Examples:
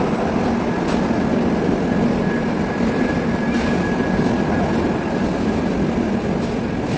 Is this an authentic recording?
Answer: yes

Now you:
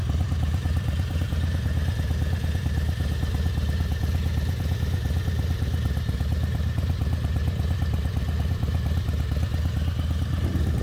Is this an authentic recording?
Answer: no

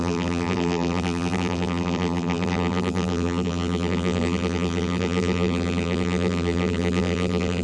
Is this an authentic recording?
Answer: no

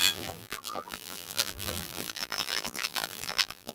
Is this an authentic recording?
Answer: no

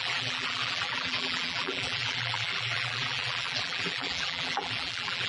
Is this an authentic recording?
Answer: no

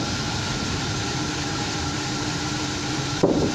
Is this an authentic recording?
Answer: no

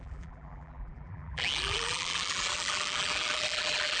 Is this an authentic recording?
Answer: no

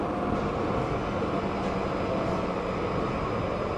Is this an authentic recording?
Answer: yes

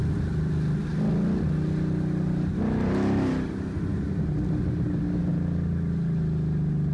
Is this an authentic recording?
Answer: yes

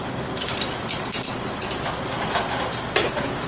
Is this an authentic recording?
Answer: yes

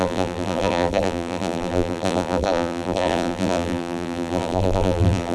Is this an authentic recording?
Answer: no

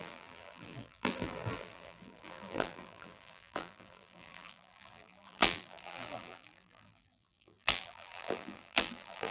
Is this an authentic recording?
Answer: no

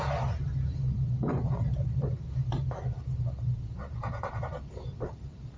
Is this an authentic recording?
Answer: no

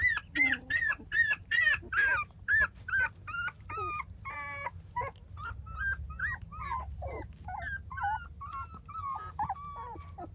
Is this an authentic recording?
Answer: yes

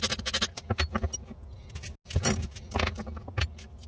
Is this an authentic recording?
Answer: yes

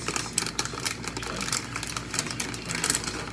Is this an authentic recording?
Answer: no